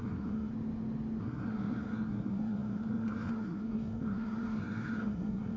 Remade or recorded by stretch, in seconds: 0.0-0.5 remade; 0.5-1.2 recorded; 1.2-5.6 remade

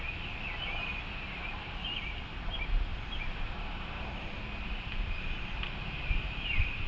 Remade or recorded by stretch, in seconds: 0.0-2.9 recorded; 2.9-6.9 remade